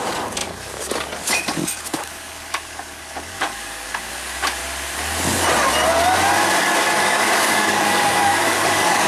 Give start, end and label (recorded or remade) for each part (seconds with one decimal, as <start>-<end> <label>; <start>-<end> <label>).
0.0-4.6 remade; 4.6-6.6 recorded; 6.6-9.1 remade